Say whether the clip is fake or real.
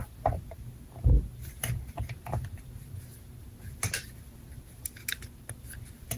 real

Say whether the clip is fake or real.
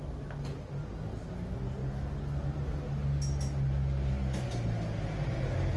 real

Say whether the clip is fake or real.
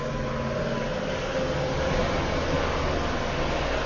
real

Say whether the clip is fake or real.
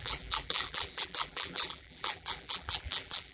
fake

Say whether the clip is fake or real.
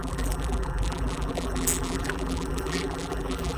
fake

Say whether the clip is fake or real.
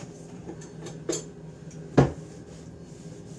real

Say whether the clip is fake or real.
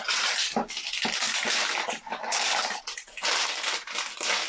real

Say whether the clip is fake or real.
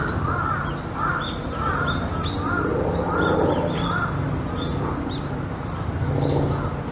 real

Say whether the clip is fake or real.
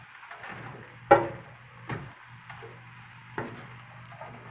real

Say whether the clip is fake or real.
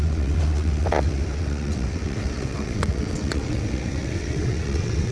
fake